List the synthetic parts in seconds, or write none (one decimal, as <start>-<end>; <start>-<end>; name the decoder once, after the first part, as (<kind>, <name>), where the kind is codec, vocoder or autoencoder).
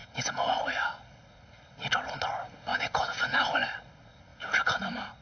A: 0.0-0.6 (vocoder, Vocos); 2.7-3.4; 4.3-4.8